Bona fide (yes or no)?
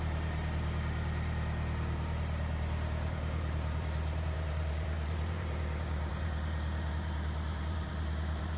no